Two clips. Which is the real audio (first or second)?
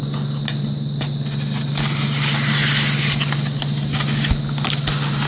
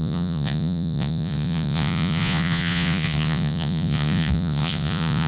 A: first